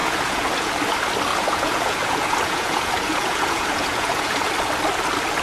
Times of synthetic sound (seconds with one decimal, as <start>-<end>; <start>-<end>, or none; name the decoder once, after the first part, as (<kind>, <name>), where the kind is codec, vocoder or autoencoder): 0.0-0.8 (vocoder, Vocos); 1.3-4.5